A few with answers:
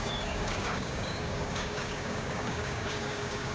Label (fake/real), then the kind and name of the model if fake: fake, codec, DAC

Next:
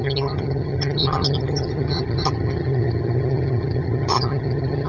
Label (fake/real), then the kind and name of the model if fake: fake, vocoder, HiFi-GAN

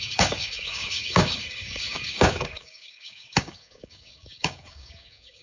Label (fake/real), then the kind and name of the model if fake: fake, codec, DAC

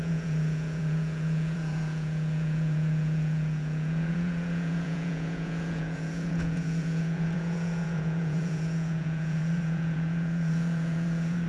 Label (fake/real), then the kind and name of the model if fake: fake, vocoder, Vocos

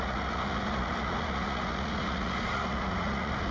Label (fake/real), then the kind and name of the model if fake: fake, vocoder, Vocos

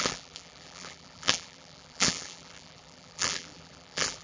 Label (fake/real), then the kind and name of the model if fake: fake, vocoder, BigVGAN v2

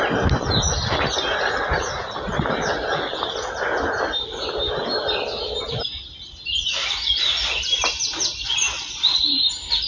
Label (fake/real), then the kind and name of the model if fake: real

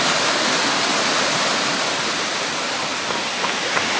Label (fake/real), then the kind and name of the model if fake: fake, vocoder, BigVGAN v2